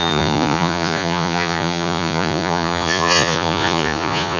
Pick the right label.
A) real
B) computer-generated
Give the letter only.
B